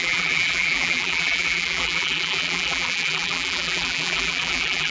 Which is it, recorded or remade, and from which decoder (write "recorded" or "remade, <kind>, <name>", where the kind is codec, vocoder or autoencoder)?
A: remade, vocoder, BigVGAN v2